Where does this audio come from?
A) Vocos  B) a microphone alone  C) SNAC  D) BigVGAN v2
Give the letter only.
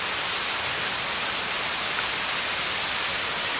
B